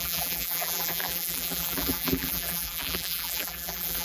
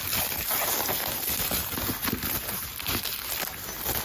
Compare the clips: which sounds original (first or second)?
second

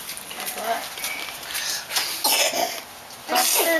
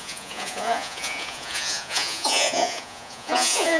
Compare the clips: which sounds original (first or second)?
first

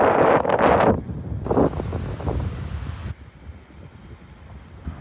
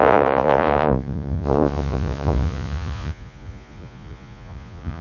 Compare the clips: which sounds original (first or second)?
first